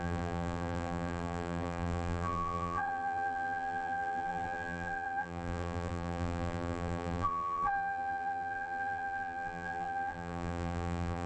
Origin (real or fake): fake